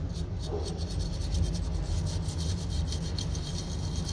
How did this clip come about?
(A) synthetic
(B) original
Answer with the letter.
B